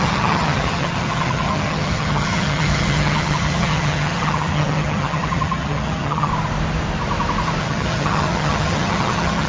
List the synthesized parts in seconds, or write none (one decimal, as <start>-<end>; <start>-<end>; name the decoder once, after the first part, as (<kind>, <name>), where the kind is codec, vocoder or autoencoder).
0.0-6.3 (vocoder, HiFi-GAN); 7.6-9.5